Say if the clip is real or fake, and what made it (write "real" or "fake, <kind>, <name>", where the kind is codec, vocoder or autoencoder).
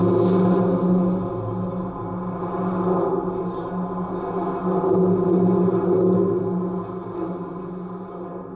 real